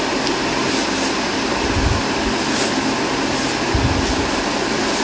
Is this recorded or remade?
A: recorded